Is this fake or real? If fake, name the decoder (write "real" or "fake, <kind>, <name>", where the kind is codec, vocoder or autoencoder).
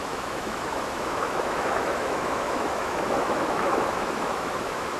fake, autoencoder, DAC-VAE